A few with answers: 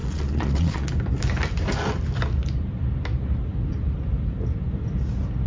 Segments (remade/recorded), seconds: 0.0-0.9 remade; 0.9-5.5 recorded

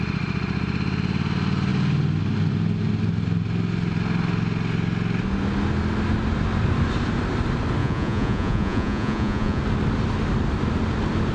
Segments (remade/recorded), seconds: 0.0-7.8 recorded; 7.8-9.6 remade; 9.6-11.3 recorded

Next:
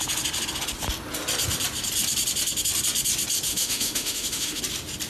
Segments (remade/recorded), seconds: 0.0-3.5 recorded; 3.5-4.6 remade; 4.6-5.1 recorded

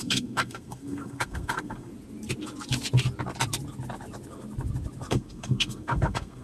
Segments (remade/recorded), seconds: 0.0-1.9 remade; 1.9-5.1 recorded; 5.1-6.4 remade

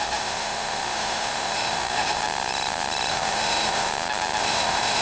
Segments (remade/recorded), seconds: 0.0-2.2 remade; 2.2-3.1 recorded; 3.1-3.9 remade; 3.9-4.4 recorded; 4.4-5.0 remade

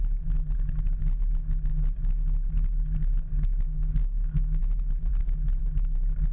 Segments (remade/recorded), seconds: 0.0-4.0 recorded; 4.0-4.6 remade; 4.6-6.3 recorded

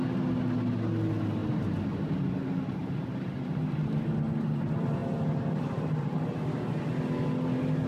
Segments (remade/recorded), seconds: 0.0-7.9 recorded

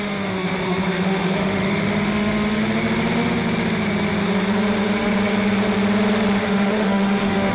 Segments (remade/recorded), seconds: 0.0-2.6 remade; 2.6-6.4 recorded; 6.4-7.5 remade